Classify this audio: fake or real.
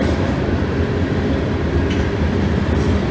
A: fake